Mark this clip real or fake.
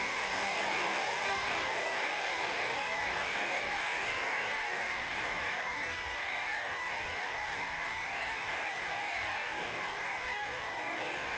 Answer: fake